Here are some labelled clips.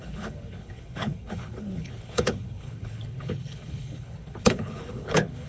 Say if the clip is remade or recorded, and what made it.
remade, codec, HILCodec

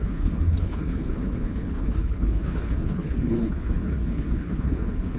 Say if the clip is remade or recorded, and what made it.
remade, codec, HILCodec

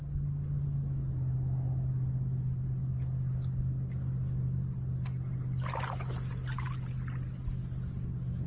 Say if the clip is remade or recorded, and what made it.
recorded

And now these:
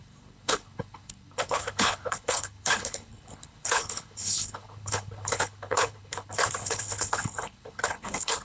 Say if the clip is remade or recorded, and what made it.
remade, codec, HILCodec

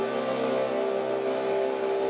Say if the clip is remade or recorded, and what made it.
recorded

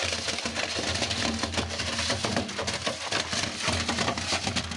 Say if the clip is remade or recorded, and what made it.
recorded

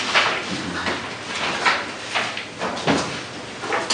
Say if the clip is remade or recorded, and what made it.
recorded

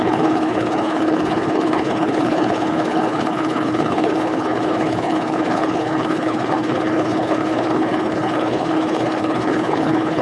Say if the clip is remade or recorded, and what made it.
remade, codec, HILCodec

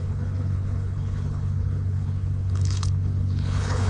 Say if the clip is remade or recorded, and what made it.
remade, codec, HILCodec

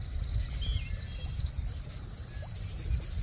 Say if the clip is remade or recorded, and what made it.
recorded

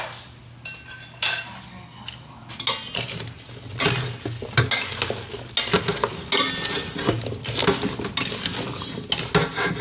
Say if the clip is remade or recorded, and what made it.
recorded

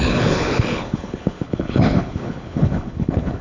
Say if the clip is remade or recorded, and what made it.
remade, codec, HILCodec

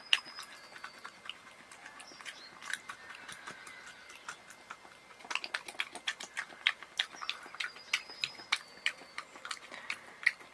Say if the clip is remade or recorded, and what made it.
recorded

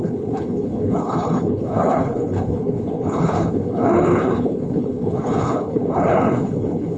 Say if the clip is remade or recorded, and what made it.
remade, codec, HILCodec